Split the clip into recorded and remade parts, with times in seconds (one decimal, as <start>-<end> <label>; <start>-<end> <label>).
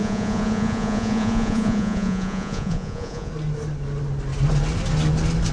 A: 0.0-3.3 remade; 3.3-5.5 recorded